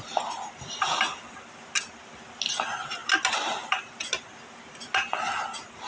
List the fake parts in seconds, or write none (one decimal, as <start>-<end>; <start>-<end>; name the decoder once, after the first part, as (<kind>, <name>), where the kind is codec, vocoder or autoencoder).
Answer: none